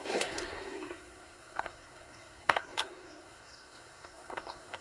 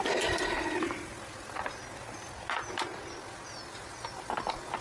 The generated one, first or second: first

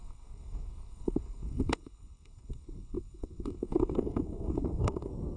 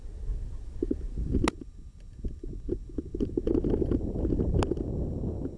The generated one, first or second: first